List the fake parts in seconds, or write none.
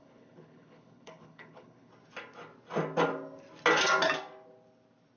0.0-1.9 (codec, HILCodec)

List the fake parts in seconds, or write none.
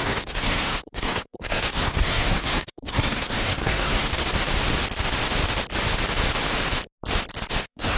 0.0-4.1 (codec, SNAC); 7.5-8.0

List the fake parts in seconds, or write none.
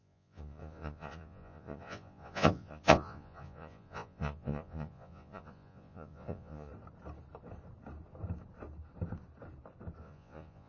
0.0-6.7 (vocoder, Vocos); 10.0-10.7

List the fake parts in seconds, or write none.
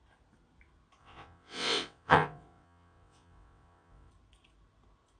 1.0-4.1 (vocoder, WaveNeXt)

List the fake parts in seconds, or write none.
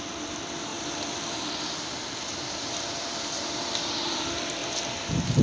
0.0-4.6 (vocoder, BigVGAN v2)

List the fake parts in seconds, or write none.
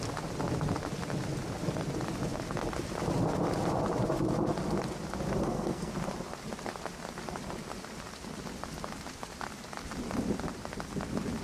5.4-5.9 (codec, SNAC)